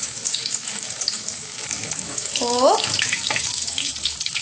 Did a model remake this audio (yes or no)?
yes